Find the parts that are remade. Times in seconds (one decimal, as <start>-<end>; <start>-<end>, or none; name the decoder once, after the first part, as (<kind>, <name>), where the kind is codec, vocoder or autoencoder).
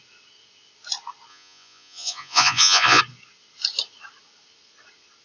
1.3-3.0 (vocoder, Vocos)